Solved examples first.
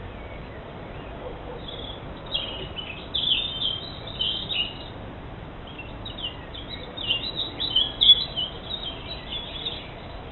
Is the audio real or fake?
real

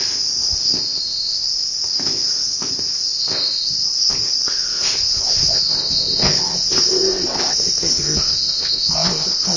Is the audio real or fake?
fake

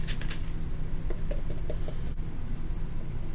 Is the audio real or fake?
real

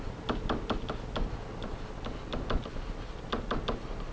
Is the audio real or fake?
real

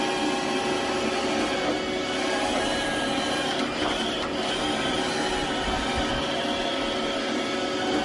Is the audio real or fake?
real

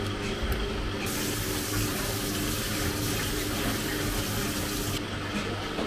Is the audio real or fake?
real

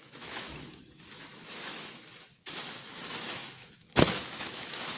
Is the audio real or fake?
fake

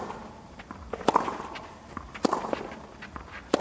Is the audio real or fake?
real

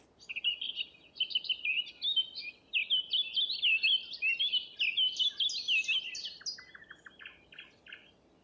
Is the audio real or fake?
real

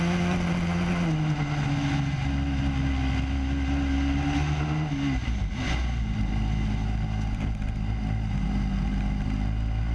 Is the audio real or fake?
real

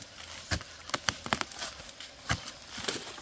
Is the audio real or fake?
real